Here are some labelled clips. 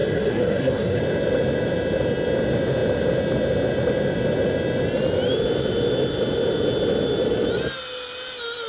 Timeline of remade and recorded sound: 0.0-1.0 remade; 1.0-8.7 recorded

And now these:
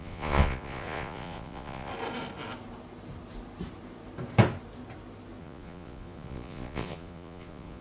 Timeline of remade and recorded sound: 0.0-1.9 remade; 1.9-5.4 recorded; 5.4-7.8 remade

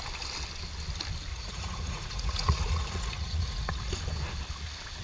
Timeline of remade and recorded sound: 0.0-1.3 recorded; 1.3-3.9 remade; 3.9-5.0 recorded

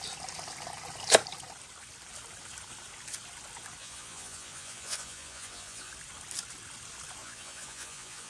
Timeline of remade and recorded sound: 0.0-3.8 recorded; 3.8-5.9 remade; 5.9-7.2 recorded; 7.2-8.3 remade

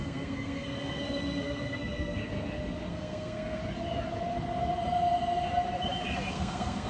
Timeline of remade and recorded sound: 0.0-2.2 remade; 2.2-2.9 recorded; 2.9-3.6 remade; 3.6-6.3 recorded; 6.3-6.9 remade